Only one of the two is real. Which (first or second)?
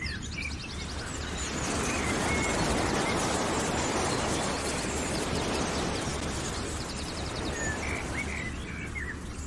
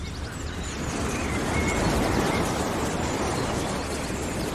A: first